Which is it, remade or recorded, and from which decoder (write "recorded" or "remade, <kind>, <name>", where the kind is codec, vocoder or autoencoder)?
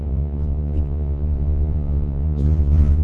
remade, vocoder, Vocos